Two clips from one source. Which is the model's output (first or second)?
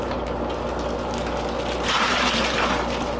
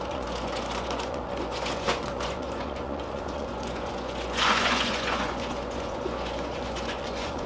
second